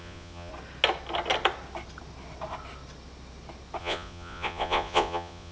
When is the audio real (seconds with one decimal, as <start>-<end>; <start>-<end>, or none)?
0.5-3.8